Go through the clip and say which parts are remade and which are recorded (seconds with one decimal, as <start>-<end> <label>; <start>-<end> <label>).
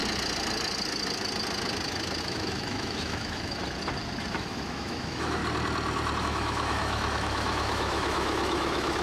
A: 0.0-2.2 recorded; 2.2-3.6 remade; 3.6-4.3 recorded; 4.3-5.4 remade; 5.4-6.2 recorded; 6.2-9.0 remade